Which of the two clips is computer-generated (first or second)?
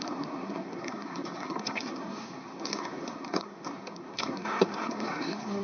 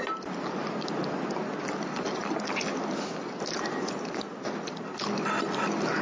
first